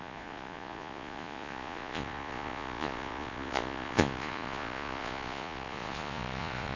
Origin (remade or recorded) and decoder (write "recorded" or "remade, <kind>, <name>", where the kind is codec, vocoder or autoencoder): remade, vocoder, Vocos